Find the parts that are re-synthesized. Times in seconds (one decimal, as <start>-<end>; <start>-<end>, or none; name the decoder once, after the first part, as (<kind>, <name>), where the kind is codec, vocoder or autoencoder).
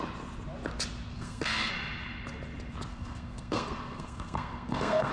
1.1-1.7 (codec, SNAC); 2.9-5.1